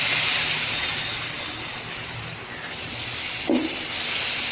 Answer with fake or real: real